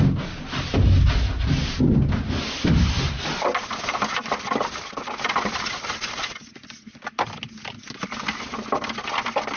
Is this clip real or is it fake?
real